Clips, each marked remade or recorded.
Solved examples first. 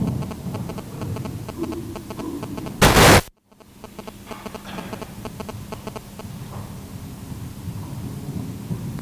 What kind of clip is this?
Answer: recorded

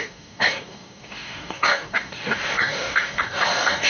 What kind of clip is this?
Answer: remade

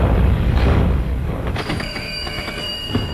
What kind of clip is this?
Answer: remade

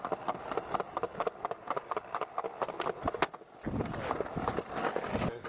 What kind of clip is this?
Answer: recorded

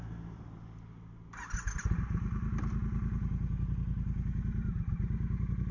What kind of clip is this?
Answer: recorded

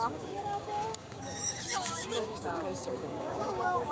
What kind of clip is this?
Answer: remade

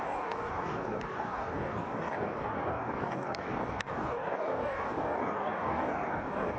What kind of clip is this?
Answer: remade